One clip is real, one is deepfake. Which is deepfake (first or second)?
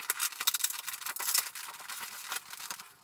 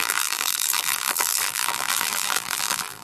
second